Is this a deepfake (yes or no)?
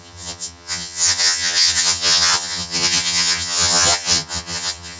yes